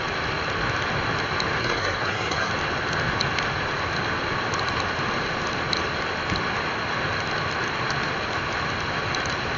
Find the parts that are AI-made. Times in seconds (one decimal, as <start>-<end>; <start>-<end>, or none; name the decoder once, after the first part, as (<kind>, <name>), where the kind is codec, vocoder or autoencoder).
1.6-2.5 (codec, SNAC)